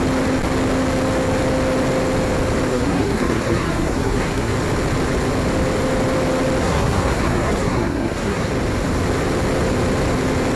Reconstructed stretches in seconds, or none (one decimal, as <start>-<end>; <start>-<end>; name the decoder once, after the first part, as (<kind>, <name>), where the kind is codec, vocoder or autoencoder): 2.7-4.5 (codec, SNAC); 6.6-8.5